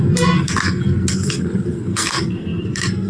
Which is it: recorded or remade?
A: remade